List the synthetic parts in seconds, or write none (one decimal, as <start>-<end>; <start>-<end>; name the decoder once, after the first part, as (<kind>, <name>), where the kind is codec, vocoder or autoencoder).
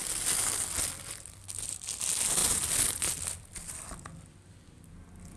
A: 2.4-3.2 (vocoder, BigVGAN v2)